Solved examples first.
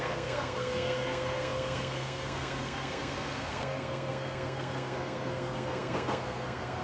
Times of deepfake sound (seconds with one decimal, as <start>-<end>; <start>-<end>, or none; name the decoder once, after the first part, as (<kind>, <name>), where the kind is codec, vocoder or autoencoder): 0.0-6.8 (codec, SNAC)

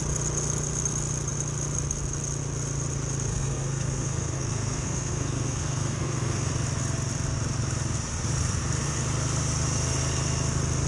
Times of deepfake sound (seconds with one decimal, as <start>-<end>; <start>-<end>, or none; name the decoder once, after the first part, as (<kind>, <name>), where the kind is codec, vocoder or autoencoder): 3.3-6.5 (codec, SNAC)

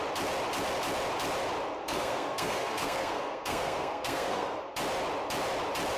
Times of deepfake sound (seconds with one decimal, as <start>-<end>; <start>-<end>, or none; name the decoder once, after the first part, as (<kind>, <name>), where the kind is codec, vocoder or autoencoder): 1.8-4.6 (codec, SNAC)

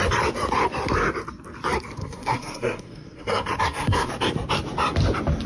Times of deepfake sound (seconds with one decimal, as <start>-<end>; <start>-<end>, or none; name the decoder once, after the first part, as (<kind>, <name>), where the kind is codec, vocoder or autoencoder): 2.0-4.1 (codec, SNAC)

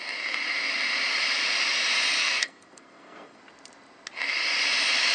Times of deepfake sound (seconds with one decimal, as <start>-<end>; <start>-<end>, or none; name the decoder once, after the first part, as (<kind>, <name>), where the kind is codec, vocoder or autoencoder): 2.2-3.4 (codec, SNAC)

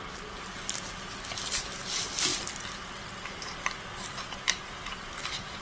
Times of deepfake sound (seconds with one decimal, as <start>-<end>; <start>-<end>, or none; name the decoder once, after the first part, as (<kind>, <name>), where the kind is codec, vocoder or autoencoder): none